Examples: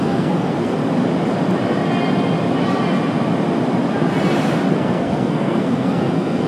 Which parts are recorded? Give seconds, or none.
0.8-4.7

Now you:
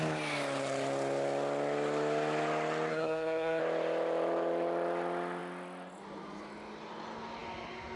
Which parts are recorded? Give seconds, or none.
0.0-2.9; 3.6-8.0